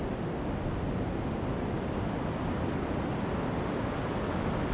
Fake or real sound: real